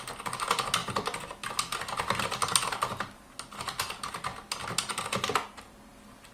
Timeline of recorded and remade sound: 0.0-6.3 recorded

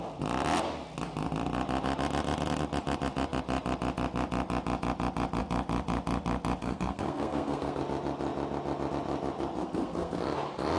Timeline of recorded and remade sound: 0.0-6.6 recorded; 6.6-7.8 remade; 7.8-9.6 recorded; 9.6-10.2 remade; 10.2-10.8 recorded

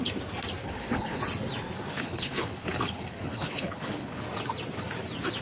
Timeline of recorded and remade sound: 0.0-0.6 recorded; 0.6-1.2 remade; 1.2-1.9 recorded; 1.9-4.2 remade; 4.2-5.4 recorded

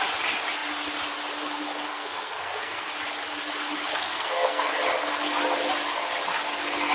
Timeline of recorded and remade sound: 0.0-1.9 recorded; 1.9-2.9 remade; 2.9-3.9 recorded; 3.9-4.7 remade; 4.7-6.9 recorded

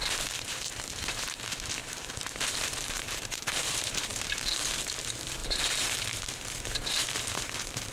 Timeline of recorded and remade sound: 0.0-7.9 remade

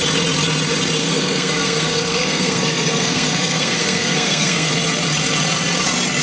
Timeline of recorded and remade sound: 0.0-1.0 recorded; 1.0-4.7 remade; 4.7-6.2 recorded

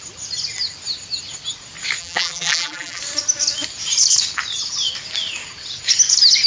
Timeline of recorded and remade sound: 0.0-2.0 recorded; 2.0-3.0 remade; 3.0-6.5 recorded